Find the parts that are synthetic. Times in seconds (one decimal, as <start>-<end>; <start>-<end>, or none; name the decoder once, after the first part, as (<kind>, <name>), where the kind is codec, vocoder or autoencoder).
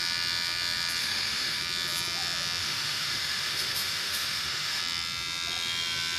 1.0-1.6 (autoencoder, DAC-VAE); 2.6-4.8